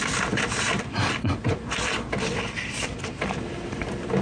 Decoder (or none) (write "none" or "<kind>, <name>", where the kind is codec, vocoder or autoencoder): none